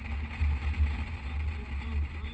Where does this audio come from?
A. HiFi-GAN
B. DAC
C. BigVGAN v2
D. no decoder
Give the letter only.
D